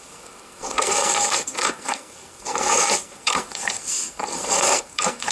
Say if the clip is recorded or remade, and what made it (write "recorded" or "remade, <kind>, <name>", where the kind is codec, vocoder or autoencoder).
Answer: remade, codec, SNAC